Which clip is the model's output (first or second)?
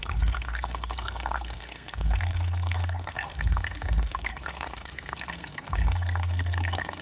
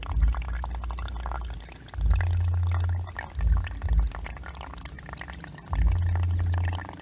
first